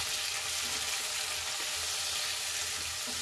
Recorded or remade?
recorded